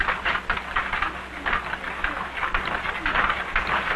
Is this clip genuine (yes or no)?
yes